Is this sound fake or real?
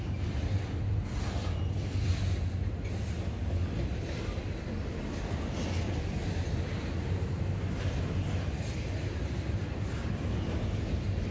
real